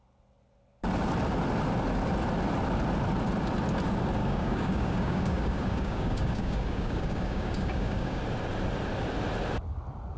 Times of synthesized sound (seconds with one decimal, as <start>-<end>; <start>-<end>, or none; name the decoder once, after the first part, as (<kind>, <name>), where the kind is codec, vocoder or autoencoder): 4.2-8.2 (codec, DAC)